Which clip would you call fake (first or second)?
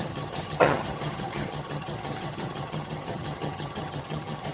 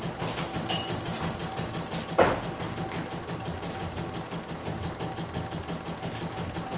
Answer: first